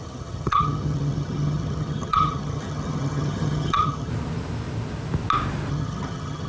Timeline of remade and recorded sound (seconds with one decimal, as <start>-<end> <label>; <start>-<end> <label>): 0.0-4.1 remade; 4.1-5.7 recorded; 5.7-6.5 remade